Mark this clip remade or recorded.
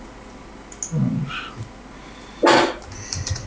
recorded